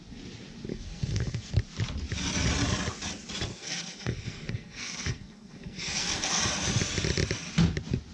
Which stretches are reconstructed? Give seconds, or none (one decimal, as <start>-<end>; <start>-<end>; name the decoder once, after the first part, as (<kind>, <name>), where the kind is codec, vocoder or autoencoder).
0.7-1.5 (codec, SNAC); 3.5-6.4